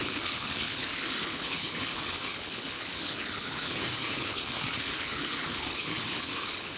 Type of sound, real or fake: fake